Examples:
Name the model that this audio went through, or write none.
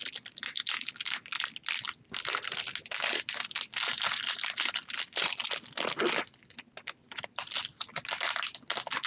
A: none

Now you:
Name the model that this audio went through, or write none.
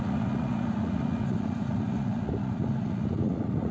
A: vocoder, Vocos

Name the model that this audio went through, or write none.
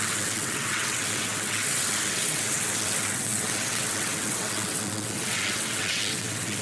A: vocoder, WaveNeXt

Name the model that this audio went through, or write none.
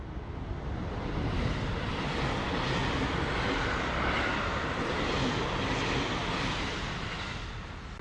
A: none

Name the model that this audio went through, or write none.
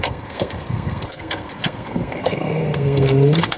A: codec, SNAC